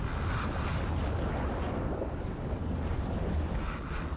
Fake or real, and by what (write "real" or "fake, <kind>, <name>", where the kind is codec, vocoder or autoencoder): real